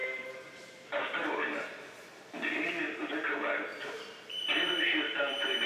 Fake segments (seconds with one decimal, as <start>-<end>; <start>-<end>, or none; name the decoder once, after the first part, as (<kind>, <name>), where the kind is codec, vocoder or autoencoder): none